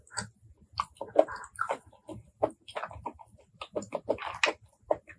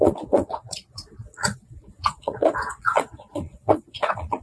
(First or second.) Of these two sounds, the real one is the first